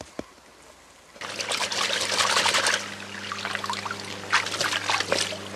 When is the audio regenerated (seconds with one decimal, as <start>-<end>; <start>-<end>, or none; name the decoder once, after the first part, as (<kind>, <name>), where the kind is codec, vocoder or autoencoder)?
none